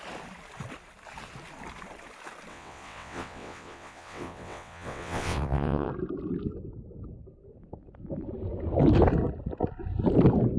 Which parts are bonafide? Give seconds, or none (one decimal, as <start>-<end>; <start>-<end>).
0.0-2.5; 5.9-10.6